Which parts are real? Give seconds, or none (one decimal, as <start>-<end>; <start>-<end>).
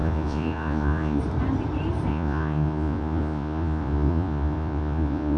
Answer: 1.2-2.1